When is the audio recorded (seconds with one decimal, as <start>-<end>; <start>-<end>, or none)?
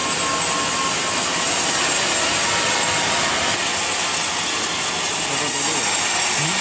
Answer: 0.0-6.6